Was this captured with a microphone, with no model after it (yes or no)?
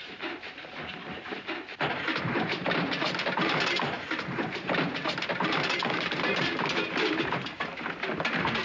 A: no